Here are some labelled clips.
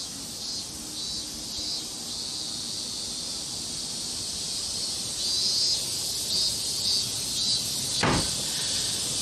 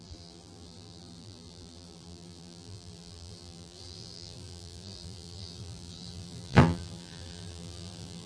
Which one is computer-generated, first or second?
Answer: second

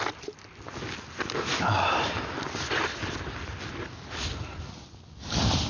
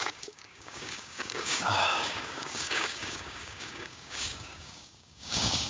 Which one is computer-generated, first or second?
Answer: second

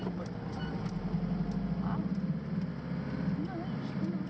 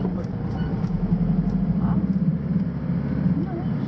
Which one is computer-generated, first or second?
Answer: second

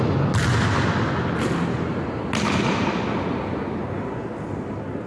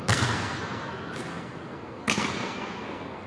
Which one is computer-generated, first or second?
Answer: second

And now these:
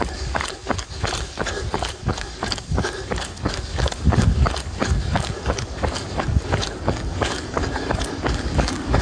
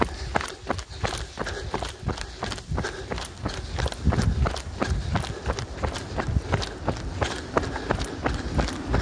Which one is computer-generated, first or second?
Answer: first